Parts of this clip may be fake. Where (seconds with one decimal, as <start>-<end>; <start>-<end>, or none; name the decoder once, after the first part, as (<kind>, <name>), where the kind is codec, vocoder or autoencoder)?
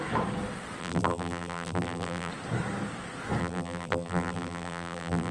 0.8-2.3 (vocoder, BigVGAN v2); 3.4-5.3